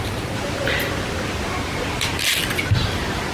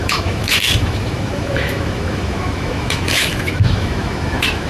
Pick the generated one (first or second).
second